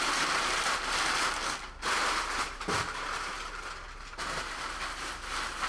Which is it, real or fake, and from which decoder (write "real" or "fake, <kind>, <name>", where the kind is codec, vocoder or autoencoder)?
real